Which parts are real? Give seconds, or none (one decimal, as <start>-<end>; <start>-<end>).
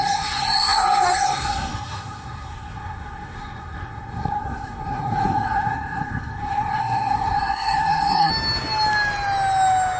8.3-10.0